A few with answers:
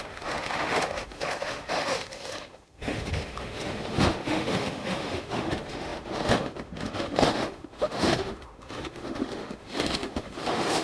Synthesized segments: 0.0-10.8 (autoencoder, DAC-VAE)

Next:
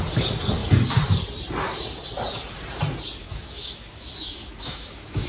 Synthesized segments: 3.2-5.3 (autoencoder, DAC-VAE)

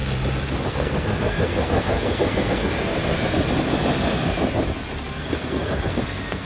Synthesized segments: 0.7-2.9 (codec, SNAC); 5.2-6.5

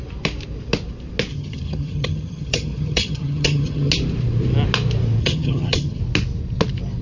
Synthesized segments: 1.3-3.9 (vocoder, HiFi-GAN); 5.2-6.0

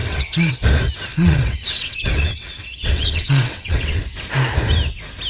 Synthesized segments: 0.0-0.5 (vocoder, WaveNeXt); 1.1-4.0

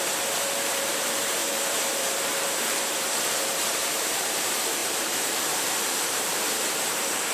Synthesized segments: 0.0-7.3 (vocoder, BigVGAN v2)

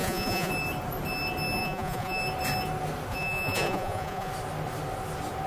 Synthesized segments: 0.0-0.5 (vocoder, Vocos); 1.6-2.2; 3.1-4.3